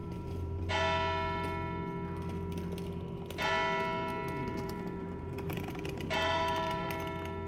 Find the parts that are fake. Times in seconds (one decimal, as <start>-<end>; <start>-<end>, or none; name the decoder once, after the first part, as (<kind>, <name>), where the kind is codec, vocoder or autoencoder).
0.0-0.7 (vocoder, BigVGAN v2); 4.4-6.9